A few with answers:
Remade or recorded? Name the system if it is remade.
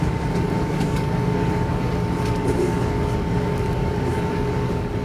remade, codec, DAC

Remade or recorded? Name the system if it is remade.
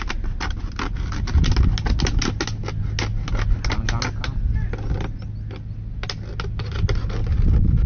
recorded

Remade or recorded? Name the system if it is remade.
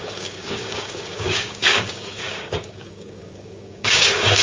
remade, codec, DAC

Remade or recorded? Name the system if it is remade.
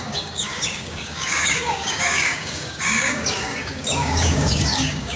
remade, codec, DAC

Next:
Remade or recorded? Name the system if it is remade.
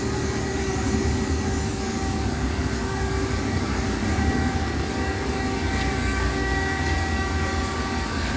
remade, codec, DAC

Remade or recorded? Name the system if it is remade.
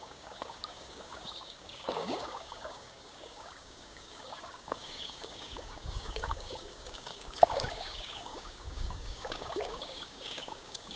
remade, codec, DAC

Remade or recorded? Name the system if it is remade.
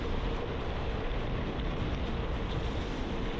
recorded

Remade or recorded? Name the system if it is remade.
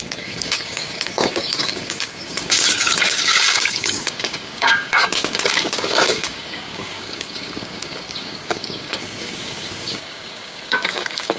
remade, codec, DAC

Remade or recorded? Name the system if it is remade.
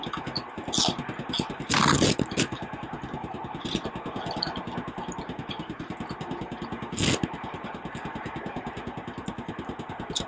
recorded